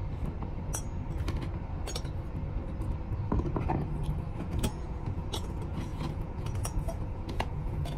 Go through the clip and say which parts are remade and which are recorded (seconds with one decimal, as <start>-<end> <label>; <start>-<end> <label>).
0.0-4.4 recorded; 4.4-8.0 remade